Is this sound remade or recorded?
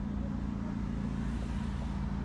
recorded